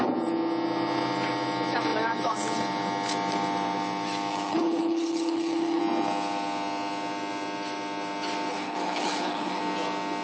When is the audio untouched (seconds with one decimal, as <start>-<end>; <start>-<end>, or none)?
0.0-4.3; 5.8-8.5; 9.6-10.2